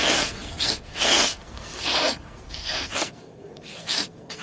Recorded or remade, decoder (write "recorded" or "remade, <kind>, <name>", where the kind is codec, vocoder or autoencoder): remade, codec, SNAC